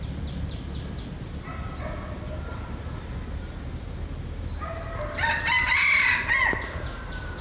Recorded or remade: recorded